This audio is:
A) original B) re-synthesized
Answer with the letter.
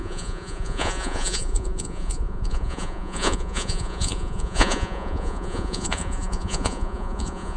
B